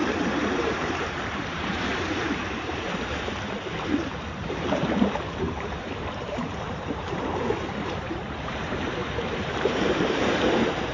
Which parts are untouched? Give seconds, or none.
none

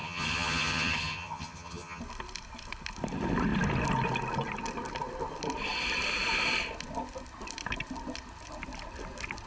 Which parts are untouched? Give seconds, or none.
2.0-9.5

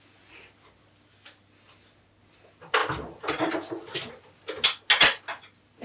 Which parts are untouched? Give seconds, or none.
0.0-5.8